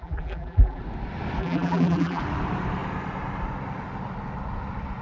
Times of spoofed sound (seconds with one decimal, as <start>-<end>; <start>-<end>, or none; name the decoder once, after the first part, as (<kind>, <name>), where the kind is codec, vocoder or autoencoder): 0.0-0.8 (vocoder, BigVGAN v2); 1.4-2.2